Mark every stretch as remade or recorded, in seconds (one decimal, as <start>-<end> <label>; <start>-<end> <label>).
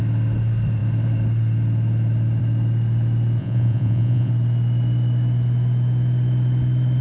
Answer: 0.0-3.4 recorded; 3.4-4.3 remade; 4.3-7.0 recorded